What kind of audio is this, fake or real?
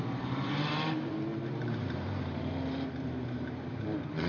fake